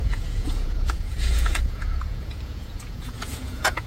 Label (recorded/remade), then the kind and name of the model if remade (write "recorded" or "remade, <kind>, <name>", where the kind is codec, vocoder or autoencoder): remade, vocoder, Vocos